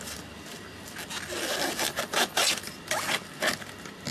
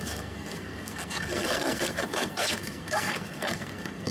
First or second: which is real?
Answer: first